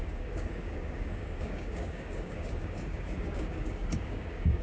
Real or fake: fake